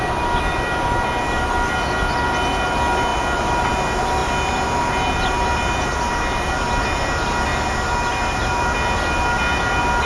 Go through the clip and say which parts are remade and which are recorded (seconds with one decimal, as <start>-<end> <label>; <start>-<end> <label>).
0.0-10.1 recorded